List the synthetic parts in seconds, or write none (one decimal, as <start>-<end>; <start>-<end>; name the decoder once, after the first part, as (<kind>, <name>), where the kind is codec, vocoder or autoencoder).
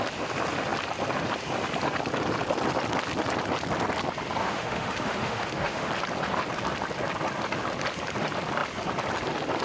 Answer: 4.4-5.9 (autoencoder, DAC-VAE)